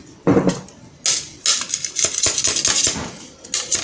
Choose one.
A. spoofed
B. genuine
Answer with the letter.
B